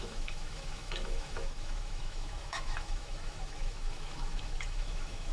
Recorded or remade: remade